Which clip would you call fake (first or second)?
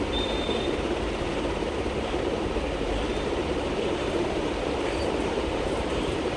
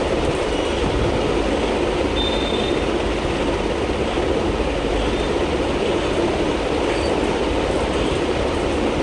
first